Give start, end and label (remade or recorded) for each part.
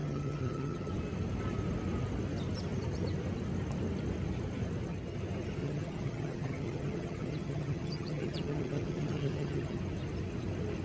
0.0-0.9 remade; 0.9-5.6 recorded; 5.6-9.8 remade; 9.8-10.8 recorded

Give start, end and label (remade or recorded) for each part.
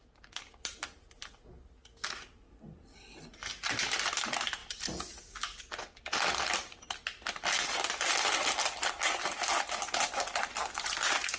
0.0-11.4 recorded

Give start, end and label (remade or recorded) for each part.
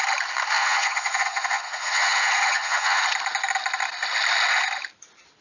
0.0-0.6 recorded; 0.6-3.0 remade; 3.0-5.4 recorded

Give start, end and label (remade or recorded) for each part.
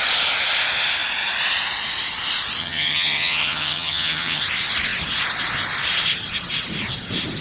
0.0-2.6 recorded; 2.6-4.4 remade; 4.4-7.4 recorded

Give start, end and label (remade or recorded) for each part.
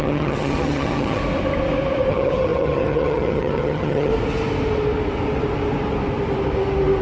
0.0-1.2 remade; 1.2-2.1 recorded; 2.1-4.1 remade; 4.1-7.0 recorded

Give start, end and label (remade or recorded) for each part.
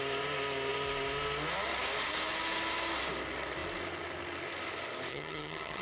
0.0-5.1 recorded; 5.1-5.8 remade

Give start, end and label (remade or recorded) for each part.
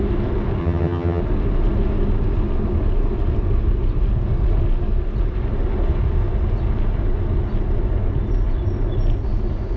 0.0-0.6 recorded; 0.6-1.2 remade; 1.2-9.8 recorded